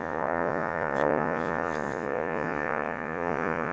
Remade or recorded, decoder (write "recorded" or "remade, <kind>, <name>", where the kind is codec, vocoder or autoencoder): remade, vocoder, Vocos